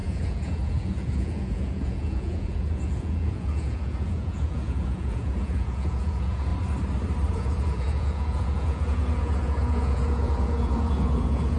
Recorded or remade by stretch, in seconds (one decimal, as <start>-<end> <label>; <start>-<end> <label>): 0.0-6.5 remade; 6.5-7.3 recorded; 7.3-11.6 remade